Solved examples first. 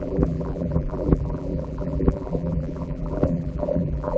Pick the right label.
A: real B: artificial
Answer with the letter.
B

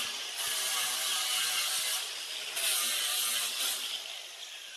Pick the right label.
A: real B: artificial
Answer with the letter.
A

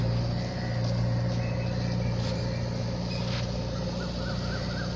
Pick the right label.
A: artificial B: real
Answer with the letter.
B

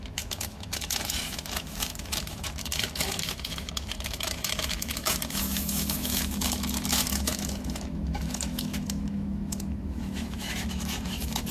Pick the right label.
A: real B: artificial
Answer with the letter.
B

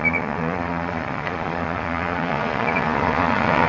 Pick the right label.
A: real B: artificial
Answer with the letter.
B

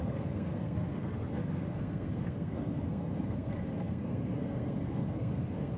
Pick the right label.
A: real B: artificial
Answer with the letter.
B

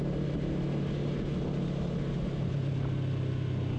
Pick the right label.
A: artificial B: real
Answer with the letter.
B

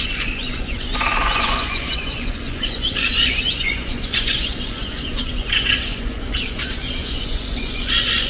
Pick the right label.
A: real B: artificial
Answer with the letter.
B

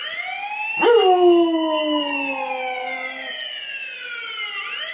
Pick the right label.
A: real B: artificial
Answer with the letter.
A